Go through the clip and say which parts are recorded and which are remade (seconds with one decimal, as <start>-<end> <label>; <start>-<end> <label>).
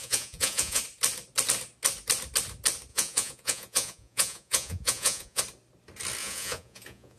0.0-0.8 remade; 0.8-2.9 recorded; 2.9-5.4 remade; 5.4-6.2 recorded; 6.2-7.2 remade